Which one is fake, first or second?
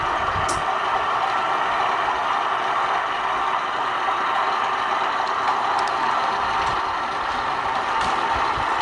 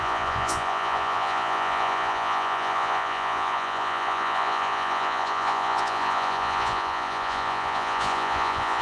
second